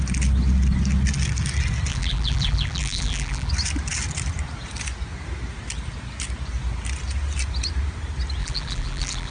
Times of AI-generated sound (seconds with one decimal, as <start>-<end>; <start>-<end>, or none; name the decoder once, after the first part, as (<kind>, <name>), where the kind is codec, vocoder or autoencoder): 1.9-3.5 (vocoder, BigVGAN v2); 8.4-9.3